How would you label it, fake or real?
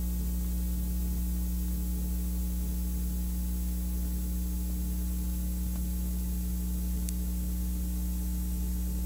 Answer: real